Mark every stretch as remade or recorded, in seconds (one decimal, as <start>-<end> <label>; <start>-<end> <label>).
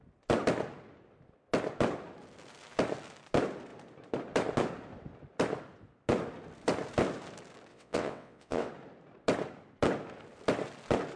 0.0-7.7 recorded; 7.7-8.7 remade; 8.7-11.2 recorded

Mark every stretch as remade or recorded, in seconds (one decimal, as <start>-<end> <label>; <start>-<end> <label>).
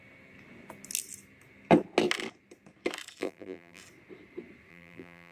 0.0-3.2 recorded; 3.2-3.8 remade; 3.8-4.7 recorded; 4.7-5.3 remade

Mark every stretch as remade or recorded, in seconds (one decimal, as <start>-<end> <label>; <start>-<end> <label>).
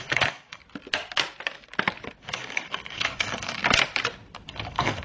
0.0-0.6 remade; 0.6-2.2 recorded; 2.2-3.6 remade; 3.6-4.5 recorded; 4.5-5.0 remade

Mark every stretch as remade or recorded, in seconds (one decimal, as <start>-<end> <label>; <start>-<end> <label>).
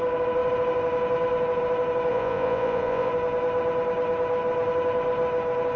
0.0-2.1 recorded; 2.1-3.1 remade; 3.1-5.8 recorded